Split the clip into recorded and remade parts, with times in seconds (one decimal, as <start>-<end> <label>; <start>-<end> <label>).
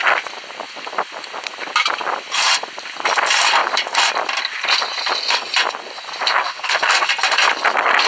0.0-6.4 recorded; 6.4-7.1 remade; 7.1-8.1 recorded